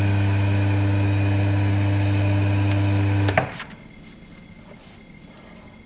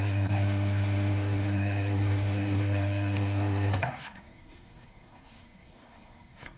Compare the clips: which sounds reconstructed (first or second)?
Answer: second